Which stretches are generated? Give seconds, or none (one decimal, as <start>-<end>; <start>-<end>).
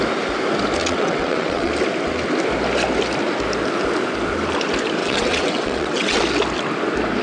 0.8-1.7; 5.0-6.2